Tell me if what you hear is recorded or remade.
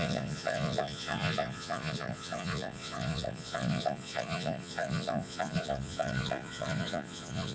remade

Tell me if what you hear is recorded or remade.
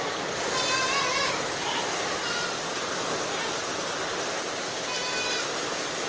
recorded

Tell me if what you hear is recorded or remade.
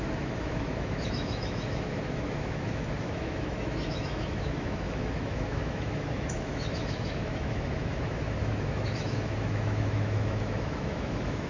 remade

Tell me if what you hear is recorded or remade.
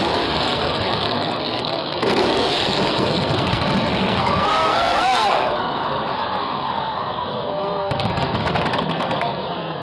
remade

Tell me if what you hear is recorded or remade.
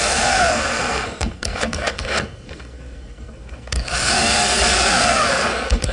remade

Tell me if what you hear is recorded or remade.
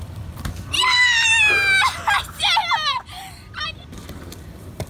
remade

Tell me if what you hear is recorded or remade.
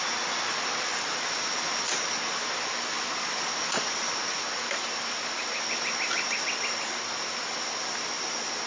recorded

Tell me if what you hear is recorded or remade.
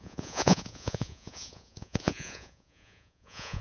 remade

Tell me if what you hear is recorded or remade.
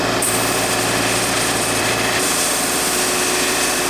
remade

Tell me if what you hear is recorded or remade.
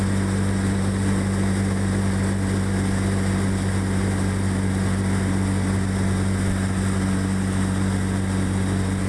recorded